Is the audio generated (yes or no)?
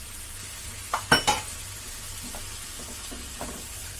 no